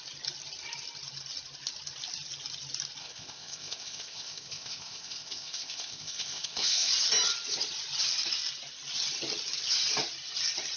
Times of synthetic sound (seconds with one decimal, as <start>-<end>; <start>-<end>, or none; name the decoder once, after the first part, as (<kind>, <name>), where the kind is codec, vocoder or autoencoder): 3.0-6.9 (codec, ZipCodec)